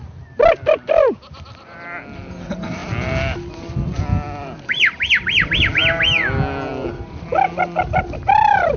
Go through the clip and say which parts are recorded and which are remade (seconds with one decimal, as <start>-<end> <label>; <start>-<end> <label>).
0.0-8.8 recorded